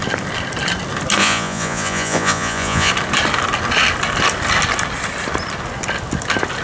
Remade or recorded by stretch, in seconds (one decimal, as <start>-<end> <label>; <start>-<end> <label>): 0.0-1.2 recorded; 1.2-2.9 remade; 2.9-6.6 recorded